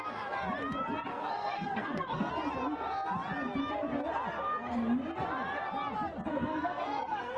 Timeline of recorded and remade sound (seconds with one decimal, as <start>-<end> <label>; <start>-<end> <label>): 0.0-1.1 recorded; 1.1-2.3 remade; 2.3-6.3 recorded; 6.3-7.4 remade